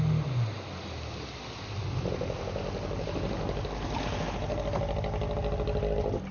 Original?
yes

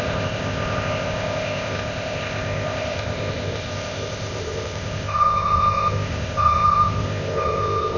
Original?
no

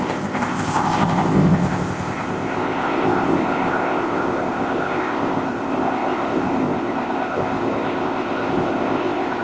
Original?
no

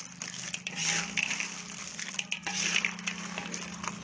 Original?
yes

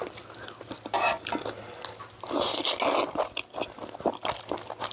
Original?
yes